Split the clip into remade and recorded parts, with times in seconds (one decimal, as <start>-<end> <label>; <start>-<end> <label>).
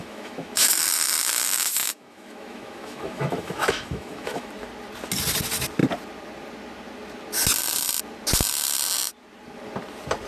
0.0-4.5 remade; 4.5-10.3 recorded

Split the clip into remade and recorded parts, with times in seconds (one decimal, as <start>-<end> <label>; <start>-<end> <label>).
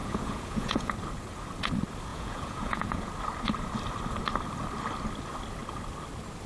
0.0-0.9 remade; 0.9-2.1 recorded; 2.1-3.1 remade; 3.1-6.5 recorded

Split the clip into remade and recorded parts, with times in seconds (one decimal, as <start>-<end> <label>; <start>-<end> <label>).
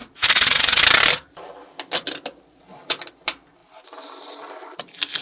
0.0-0.8 remade; 0.8-5.2 recorded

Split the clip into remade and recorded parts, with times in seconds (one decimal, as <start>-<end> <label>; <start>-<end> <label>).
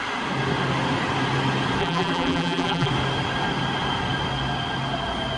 0.0-1.8 recorded; 1.8-2.9 remade; 2.9-5.4 recorded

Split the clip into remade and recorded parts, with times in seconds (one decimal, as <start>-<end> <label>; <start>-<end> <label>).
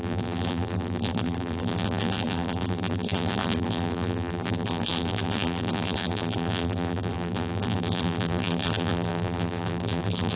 0.0-10.4 remade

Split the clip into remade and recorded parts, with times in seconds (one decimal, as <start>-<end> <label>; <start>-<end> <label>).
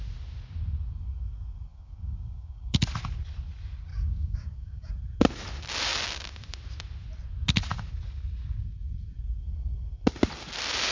0.0-1.7 recorded; 1.7-2.8 remade; 2.8-3.9 recorded; 3.9-4.9 remade; 4.9-10.9 recorded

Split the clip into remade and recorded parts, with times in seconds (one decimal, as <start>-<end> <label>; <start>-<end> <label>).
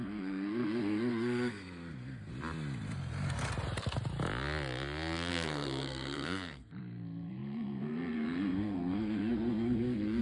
0.0-2.3 remade; 2.3-5.3 recorded; 5.3-10.2 remade